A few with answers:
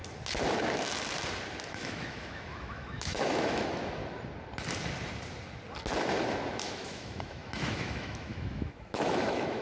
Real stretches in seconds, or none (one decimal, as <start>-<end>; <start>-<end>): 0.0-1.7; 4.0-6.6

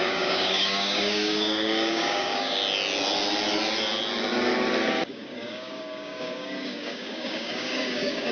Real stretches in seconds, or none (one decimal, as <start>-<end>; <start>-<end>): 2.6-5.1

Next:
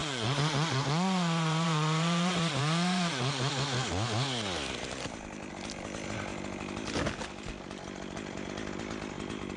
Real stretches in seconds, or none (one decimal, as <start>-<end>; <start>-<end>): 3.5-9.6